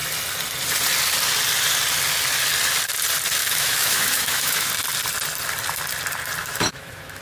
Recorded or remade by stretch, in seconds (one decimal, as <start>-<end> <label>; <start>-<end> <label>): 0.0-3.4 recorded; 3.4-4.7 remade; 4.7-6.4 recorded; 6.4-7.2 remade